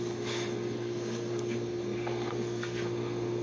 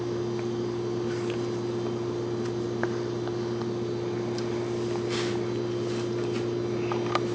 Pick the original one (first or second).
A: second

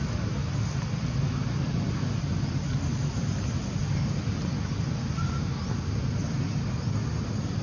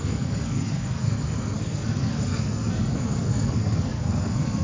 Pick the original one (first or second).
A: first